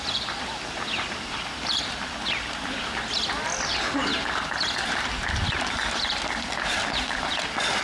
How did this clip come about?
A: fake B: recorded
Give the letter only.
A